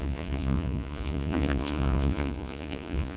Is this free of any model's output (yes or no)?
no